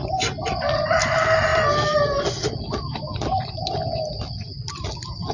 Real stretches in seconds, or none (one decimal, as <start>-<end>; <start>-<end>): 0.0-5.3